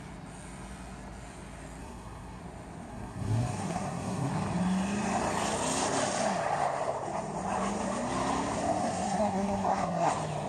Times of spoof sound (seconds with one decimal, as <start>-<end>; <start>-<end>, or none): 1.8-2.4; 2.9-4.3; 8.8-10.1